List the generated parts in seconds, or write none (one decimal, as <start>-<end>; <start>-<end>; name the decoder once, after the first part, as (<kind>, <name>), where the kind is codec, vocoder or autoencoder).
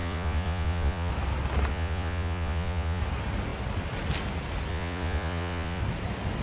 0.0-1.1 (vocoder, Vocos); 1.7-3.0; 4.7-5.8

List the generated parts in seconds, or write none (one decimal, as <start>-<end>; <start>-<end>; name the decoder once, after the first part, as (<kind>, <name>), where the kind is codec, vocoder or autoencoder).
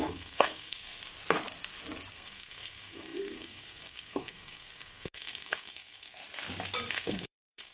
0.0-1.0 (codec, SNAC); 2.1-6.2; 6.9-7.7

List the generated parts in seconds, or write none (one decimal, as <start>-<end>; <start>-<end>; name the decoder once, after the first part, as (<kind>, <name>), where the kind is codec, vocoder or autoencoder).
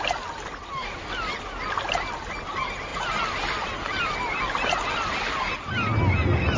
none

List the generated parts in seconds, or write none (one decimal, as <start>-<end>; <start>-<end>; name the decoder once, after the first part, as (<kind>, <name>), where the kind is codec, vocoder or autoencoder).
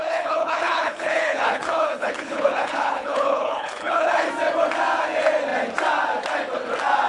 0.0-4.3 (codec, HILCodec)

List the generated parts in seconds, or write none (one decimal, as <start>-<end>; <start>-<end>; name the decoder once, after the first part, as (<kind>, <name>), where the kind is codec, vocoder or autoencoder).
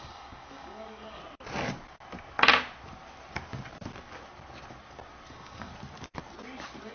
0.0-1.2 (codec, DAC); 5.3-5.7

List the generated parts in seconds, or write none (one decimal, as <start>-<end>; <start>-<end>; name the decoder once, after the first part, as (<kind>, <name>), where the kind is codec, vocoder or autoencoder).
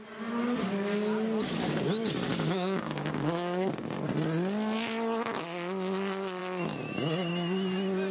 2.3-3.7 (codec, DAC)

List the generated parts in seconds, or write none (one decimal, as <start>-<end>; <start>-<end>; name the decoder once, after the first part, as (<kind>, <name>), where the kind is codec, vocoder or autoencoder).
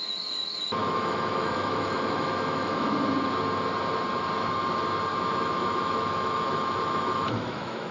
0.8-2.9 (autoencoder, DAC-VAE); 5.1-7.9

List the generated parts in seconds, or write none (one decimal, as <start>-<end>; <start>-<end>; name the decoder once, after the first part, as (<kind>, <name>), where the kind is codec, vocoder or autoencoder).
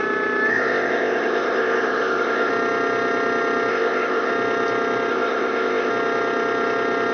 0.5-2.5 (codec, ZipCodec); 3.7-4.3; 5.1-5.9